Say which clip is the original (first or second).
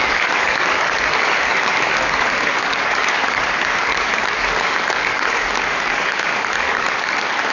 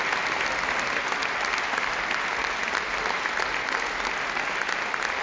second